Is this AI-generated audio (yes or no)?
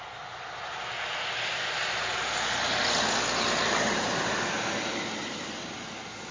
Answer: no